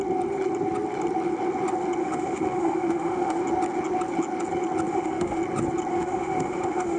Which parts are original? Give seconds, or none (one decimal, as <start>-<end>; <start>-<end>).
0.0-2.0; 3.4-4.9; 5.4-5.9